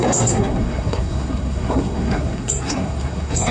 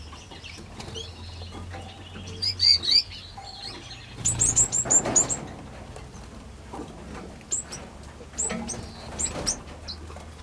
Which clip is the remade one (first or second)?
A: first